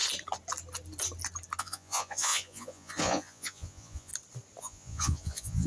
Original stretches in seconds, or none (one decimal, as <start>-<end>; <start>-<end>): 0.0-1.6; 4.1-4.6